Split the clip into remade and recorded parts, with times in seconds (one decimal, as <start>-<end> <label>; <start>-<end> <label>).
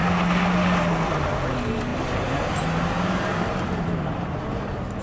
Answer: 0.0-1.9 recorded; 1.9-5.0 remade